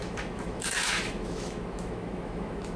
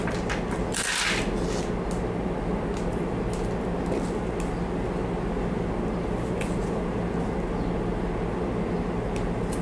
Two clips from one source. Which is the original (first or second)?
second